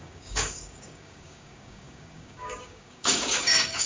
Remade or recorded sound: remade